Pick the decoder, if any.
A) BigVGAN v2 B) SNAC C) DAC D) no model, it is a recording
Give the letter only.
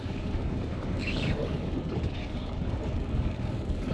C